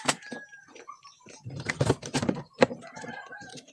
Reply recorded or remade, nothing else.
remade